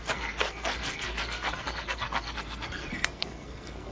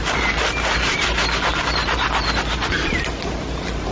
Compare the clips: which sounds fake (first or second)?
first